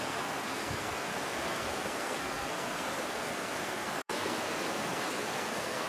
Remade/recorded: remade